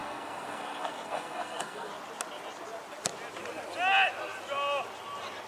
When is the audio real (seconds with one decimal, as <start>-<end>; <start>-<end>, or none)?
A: 1.9-5.5